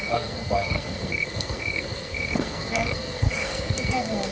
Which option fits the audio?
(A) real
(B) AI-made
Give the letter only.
B